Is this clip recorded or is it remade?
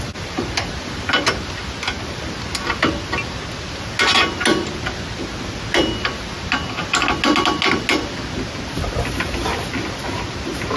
recorded